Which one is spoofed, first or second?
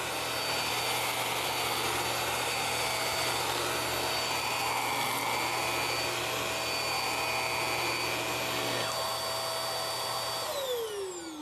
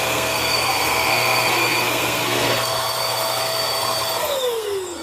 second